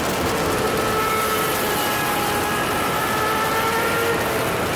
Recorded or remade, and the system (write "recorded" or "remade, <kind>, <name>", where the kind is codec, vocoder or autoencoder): recorded